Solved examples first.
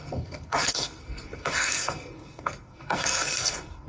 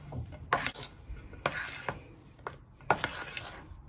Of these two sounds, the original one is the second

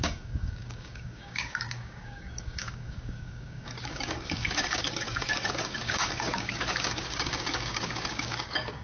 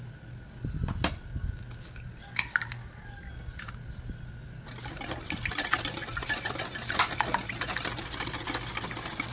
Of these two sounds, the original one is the second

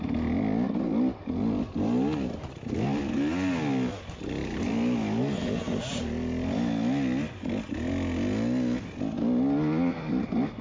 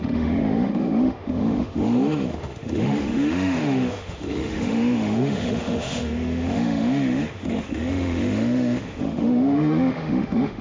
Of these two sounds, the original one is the first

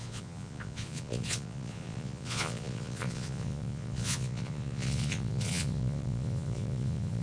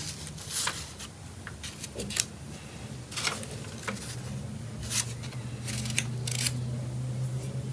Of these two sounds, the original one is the second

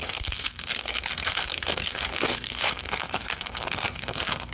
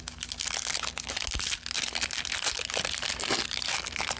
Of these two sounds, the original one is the second